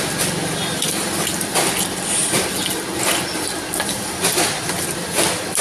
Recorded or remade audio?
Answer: recorded